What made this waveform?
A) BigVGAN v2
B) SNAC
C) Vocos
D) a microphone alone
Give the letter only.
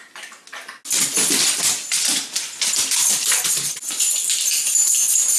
D